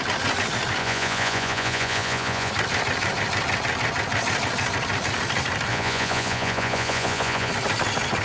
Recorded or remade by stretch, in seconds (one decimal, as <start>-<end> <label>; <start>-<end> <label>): 0.0-0.8 recorded; 0.8-2.5 remade; 2.5-5.7 recorded; 5.7-7.5 remade; 7.5-8.2 recorded